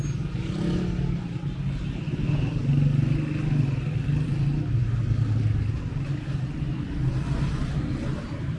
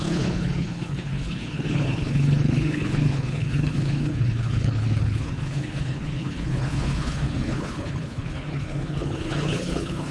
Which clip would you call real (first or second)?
first